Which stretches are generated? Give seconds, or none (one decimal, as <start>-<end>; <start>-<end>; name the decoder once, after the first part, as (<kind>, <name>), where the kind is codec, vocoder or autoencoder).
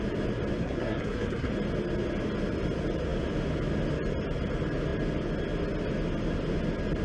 0.6-1.5 (codec, SNAC)